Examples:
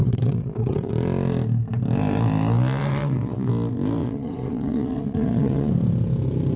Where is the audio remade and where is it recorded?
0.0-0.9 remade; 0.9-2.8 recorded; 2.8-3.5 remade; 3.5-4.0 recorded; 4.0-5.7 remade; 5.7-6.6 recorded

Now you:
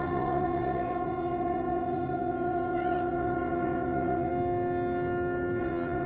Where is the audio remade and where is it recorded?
0.0-4.3 remade; 4.3-5.6 recorded; 5.6-6.1 remade

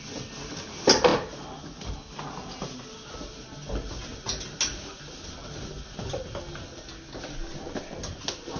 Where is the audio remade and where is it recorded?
0.0-8.6 recorded

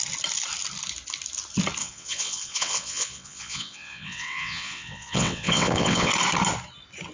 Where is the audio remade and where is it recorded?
0.0-1.8 recorded; 1.8-6.1 remade; 6.1-7.1 recorded

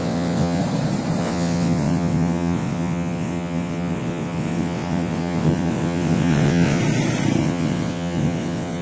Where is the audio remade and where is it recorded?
0.0-0.6 remade; 0.6-1.2 recorded; 1.2-6.8 remade; 6.8-7.4 recorded; 7.4-8.8 remade

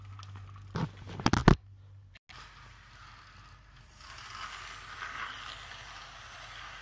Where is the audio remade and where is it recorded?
0.0-6.8 recorded